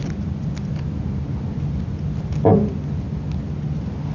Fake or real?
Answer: real